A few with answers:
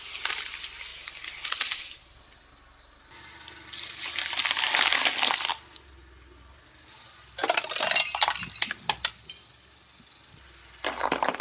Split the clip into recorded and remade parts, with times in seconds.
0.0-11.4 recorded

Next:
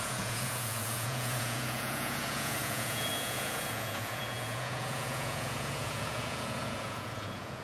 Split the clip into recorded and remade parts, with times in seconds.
0.0-7.6 remade

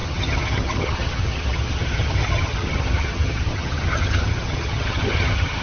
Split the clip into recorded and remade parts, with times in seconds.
0.0-5.6 remade

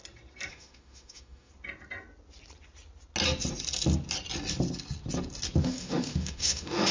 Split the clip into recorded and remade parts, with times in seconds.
0.0-0.5 recorded; 0.5-1.5 remade; 1.5-5.6 recorded; 5.6-6.9 remade